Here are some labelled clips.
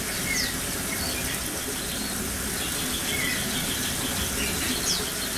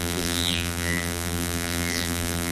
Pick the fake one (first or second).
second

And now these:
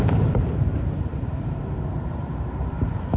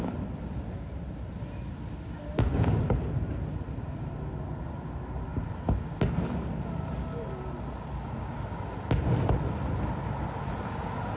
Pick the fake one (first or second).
first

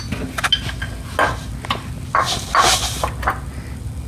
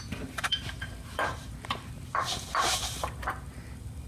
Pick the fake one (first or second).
second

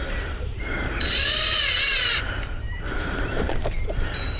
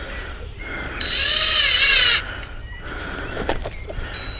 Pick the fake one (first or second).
first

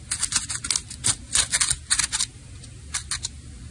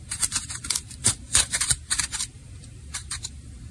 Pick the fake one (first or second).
second